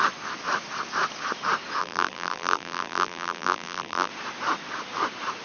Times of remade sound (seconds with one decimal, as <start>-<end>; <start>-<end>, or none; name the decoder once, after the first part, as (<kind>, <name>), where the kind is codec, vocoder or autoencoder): 1.8-4.1 (vocoder, BigVGAN v2)